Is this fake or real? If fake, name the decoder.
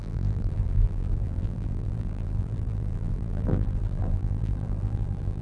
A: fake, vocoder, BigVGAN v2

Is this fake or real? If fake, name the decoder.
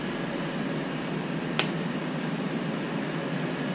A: real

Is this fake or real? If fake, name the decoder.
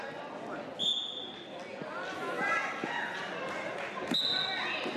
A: real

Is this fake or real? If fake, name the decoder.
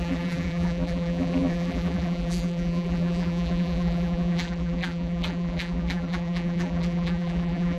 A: fake, vocoder, BigVGAN v2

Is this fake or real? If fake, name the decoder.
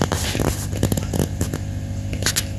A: real